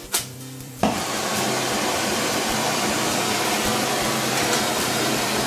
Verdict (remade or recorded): remade